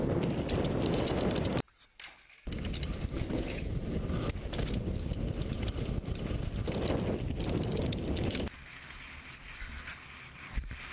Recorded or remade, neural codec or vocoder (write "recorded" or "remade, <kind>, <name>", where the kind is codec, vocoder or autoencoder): recorded